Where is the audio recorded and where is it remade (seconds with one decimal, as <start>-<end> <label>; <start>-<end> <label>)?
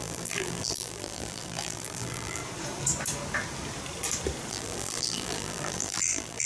0.0-2.4 remade; 2.4-4.5 recorded; 4.5-6.5 remade